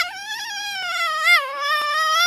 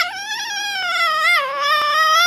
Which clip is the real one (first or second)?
second